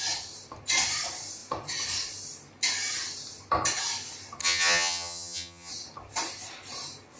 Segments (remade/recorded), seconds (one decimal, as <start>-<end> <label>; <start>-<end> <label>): 0.0-4.4 recorded; 4.4-5.7 remade; 5.7-7.2 recorded